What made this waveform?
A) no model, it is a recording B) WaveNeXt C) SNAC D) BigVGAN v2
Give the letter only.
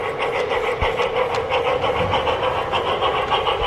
A